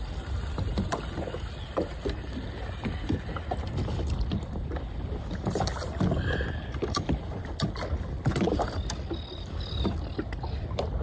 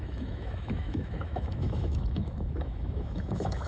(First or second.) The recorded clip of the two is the first